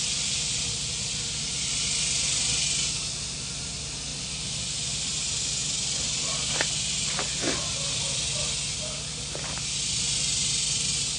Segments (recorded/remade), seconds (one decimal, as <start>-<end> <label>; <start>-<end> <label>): 0.0-11.2 recorded